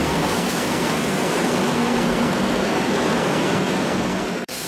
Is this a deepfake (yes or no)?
yes